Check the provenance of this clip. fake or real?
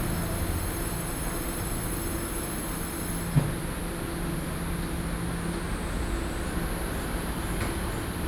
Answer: real